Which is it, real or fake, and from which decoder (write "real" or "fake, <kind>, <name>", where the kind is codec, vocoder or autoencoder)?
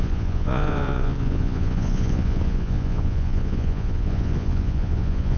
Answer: fake, vocoder, Vocos